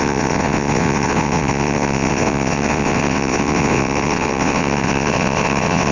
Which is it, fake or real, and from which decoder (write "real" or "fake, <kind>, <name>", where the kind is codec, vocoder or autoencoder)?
fake, vocoder, WaveNeXt